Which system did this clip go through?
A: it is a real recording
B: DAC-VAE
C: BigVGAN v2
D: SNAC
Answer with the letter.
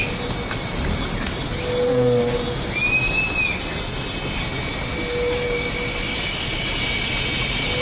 A